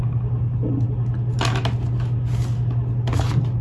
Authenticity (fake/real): real